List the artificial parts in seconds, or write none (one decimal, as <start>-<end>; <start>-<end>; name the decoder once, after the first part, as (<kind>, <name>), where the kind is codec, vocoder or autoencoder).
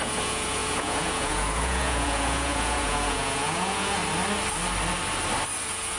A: 0.0-4.0 (vocoder, Vocos); 5.6-6.0